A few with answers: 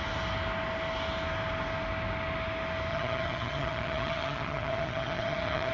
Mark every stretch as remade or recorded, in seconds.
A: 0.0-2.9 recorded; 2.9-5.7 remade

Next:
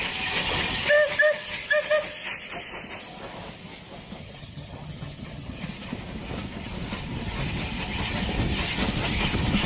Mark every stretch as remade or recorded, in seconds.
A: 0.0-4.2 recorded; 4.2-5.6 remade; 5.6-9.7 recorded

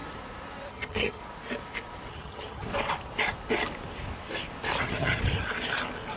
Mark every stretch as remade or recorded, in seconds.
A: 0.0-0.7 recorded; 0.7-1.2 remade; 1.2-2.1 recorded; 2.1-2.7 remade; 2.7-4.8 recorded; 4.8-5.2 remade; 5.2-6.2 recorded

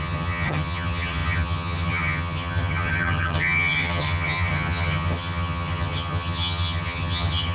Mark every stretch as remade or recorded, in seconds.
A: 0.0-7.5 remade

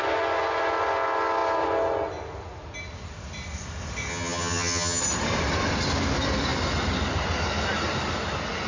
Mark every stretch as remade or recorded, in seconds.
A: 0.0-4.1 recorded; 4.1-5.0 remade; 5.0-8.7 recorded